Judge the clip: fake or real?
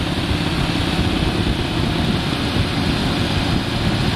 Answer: real